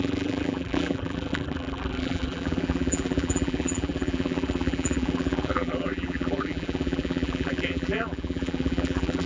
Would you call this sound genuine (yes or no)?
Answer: no